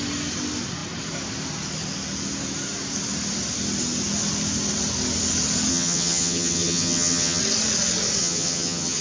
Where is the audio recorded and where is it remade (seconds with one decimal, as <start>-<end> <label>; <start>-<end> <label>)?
0.0-5.7 recorded; 5.7-7.4 remade; 7.4-8.2 recorded; 8.2-9.0 remade